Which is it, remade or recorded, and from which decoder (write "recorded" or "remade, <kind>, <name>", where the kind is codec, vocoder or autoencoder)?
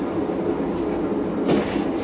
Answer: recorded